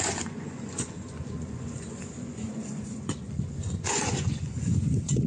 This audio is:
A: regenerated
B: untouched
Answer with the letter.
A